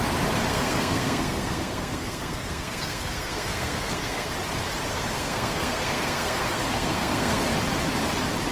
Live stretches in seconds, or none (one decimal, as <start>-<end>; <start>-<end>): 0.0-0.5; 4.3-4.9; 7.5-8.5